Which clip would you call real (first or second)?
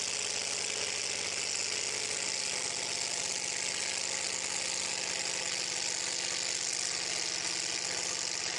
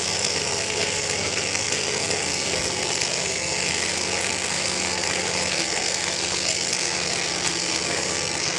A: first